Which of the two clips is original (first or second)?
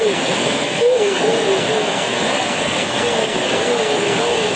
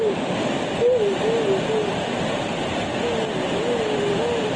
second